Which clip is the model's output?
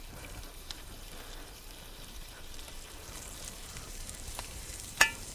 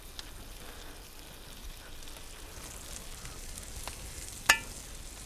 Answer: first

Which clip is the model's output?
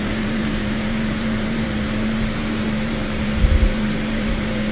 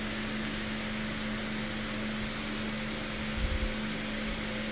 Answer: first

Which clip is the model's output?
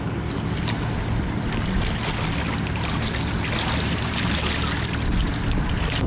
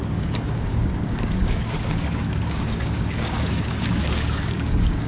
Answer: second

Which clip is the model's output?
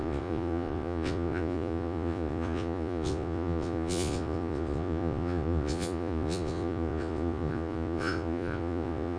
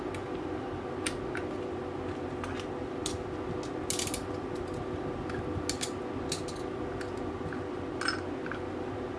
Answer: first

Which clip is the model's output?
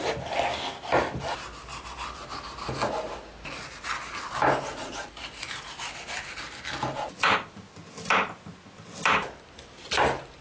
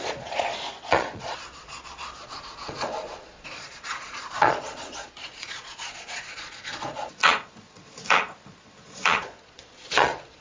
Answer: second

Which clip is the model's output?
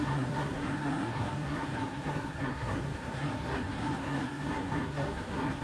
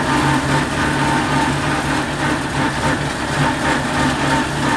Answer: first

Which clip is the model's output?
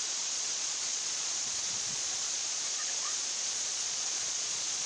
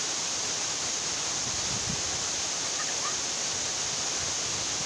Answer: first